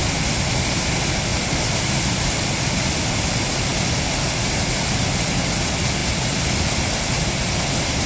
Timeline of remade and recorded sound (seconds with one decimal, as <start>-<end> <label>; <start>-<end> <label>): 0.0-8.1 recorded